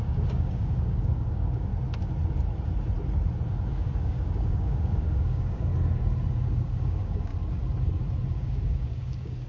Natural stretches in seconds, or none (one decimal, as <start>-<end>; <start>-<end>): 1.7-3.7; 5.7-6.5; 7.3-8.3

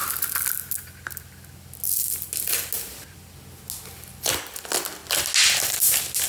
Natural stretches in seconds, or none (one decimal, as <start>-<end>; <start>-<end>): 0.0-6.3

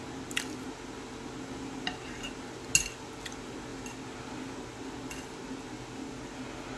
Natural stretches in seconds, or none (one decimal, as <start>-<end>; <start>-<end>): 0.0-6.8

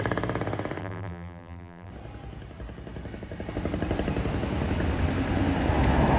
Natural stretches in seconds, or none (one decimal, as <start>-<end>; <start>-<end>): 0.0-0.8; 1.9-6.2

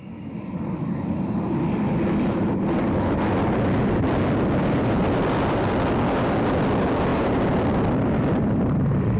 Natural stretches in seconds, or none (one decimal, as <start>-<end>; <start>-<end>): 0.0-9.2